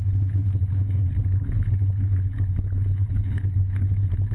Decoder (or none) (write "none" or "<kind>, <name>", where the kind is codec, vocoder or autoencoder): codec, HILCodec